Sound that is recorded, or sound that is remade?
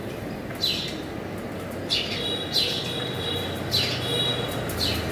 recorded